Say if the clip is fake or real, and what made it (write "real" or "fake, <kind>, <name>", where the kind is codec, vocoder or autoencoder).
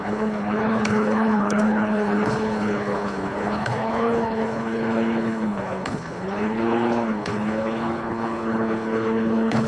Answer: fake, codec, HILCodec